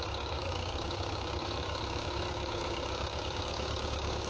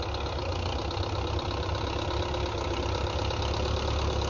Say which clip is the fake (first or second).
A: first